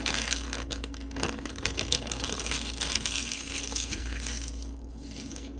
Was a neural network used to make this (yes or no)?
yes